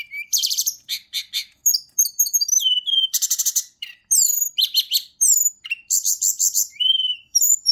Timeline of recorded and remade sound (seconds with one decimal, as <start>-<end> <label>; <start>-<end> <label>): 0.0-1.6 remade; 1.6-3.4 recorded; 3.4-4.0 remade; 4.0-7.2 recorded; 7.2-7.7 remade